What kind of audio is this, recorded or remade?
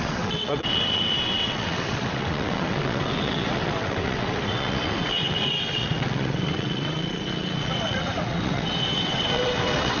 remade